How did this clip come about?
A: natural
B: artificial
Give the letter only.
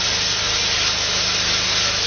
A